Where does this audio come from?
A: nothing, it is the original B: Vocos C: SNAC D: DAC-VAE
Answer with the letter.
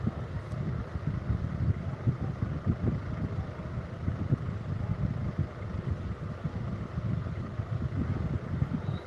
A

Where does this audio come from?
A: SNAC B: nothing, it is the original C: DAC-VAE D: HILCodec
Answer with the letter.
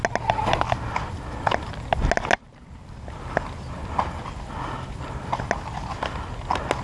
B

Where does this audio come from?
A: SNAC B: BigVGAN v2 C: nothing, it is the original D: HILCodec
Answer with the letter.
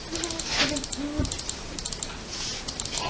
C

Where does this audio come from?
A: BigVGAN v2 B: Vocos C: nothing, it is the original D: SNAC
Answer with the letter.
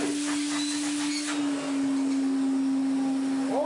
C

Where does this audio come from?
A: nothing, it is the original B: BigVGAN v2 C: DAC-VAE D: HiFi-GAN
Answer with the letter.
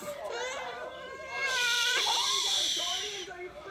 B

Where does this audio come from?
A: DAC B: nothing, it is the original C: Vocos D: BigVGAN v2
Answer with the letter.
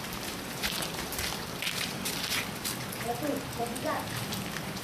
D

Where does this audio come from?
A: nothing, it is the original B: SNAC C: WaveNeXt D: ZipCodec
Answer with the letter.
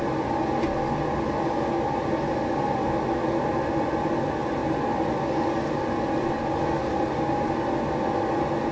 A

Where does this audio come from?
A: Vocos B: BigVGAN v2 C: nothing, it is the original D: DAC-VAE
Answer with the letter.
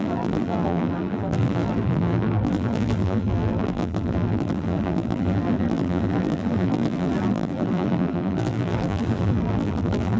B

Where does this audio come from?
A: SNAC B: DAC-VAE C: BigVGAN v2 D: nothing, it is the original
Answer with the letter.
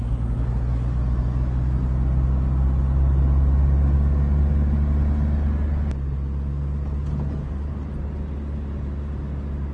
D